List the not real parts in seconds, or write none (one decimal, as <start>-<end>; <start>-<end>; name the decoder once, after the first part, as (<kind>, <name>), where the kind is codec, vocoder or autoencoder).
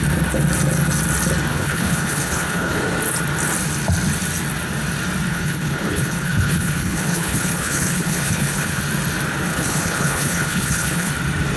1.5-2.8 (codec, HILCodec); 5.3-8.8; 9.5-11.1